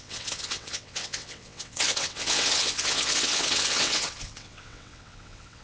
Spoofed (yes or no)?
yes